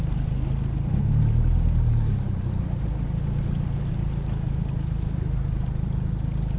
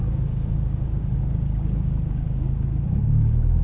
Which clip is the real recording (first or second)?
first